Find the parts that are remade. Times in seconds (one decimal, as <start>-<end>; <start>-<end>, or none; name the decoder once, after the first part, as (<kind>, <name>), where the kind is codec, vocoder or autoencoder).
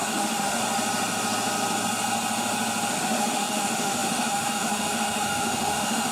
0.0-0.6 (autoencoder, DAC-VAE); 2.9-6.1